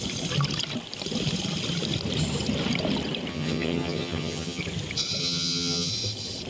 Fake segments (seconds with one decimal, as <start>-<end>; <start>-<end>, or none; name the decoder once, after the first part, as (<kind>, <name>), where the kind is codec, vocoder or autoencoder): 3.3-4.6 (vocoder, HiFi-GAN); 5.2-5.9